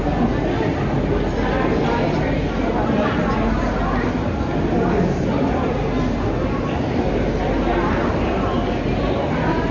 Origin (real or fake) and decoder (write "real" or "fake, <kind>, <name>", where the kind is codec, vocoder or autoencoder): real